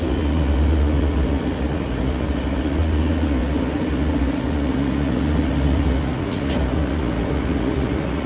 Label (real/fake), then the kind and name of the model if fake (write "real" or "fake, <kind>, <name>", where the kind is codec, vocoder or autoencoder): fake, vocoder, Vocos